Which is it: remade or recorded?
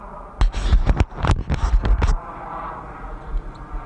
recorded